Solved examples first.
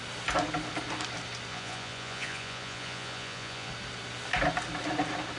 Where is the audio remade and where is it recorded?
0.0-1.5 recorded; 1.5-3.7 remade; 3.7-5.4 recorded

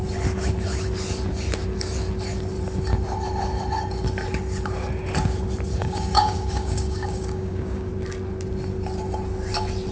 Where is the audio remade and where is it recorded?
0.0-5.7 recorded; 5.7-7.9 remade; 7.9-9.9 recorded